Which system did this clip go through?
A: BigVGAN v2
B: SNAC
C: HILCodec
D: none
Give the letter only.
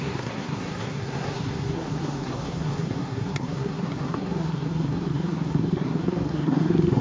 B